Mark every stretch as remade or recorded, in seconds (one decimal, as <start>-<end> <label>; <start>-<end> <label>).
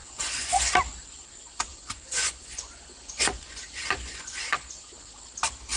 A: 0.0-0.7 remade; 0.7-1.7 recorded; 1.7-5.2 remade; 5.2-5.8 recorded